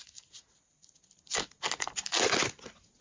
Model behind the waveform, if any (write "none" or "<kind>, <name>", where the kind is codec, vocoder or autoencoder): none